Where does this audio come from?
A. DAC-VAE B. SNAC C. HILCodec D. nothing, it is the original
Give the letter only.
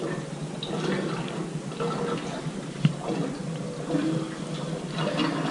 D